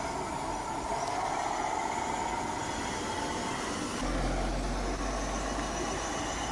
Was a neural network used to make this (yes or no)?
no